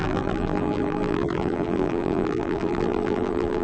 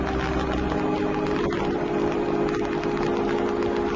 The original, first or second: second